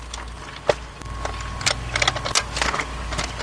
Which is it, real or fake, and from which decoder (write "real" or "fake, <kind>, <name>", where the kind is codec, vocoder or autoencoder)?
real